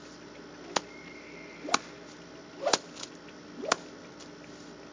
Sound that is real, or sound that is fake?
real